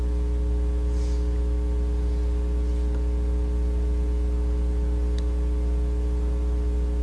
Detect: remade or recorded recorded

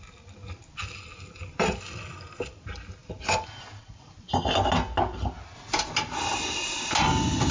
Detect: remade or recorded recorded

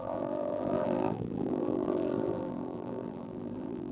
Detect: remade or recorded remade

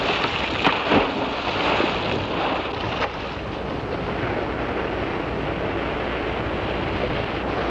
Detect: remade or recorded recorded